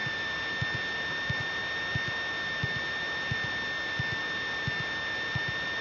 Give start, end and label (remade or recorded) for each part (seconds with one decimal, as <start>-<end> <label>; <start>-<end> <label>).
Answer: 0.0-5.8 recorded